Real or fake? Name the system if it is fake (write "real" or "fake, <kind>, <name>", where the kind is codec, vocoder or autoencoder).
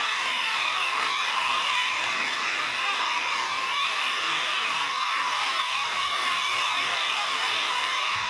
fake, codec, DAC